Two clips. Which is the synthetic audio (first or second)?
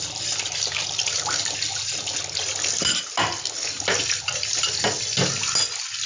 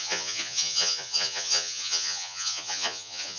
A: second